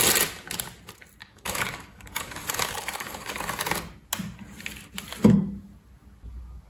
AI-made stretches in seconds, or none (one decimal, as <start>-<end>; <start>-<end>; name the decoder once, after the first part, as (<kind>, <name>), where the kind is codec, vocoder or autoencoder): 1.2-3.5 (codec, DAC)